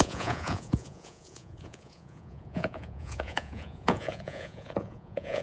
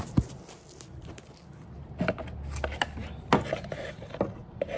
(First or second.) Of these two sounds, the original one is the second